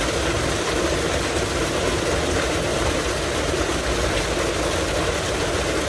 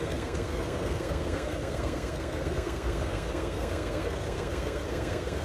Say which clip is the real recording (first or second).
first